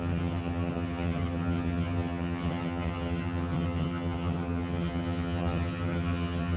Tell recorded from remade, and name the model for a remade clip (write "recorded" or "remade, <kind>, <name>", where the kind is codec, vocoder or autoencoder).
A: remade, vocoder, HiFi-GAN